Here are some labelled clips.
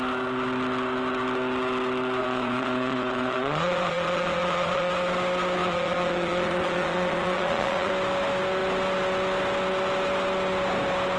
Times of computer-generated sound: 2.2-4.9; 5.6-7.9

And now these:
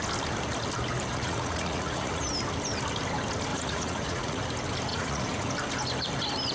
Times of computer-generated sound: 1.1-2.2; 3.5-4.4; 4.9-5.5

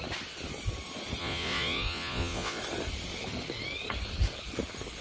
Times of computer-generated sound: 1.2-2.6

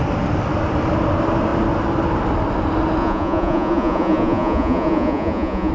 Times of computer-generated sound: 3.0-5.7

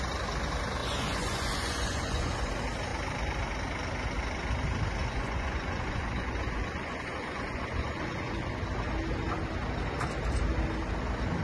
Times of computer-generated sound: 0.8-2.5; 5.0-8.5

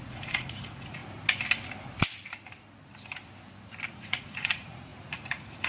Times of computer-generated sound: 0.0-1.0; 3.9-5.7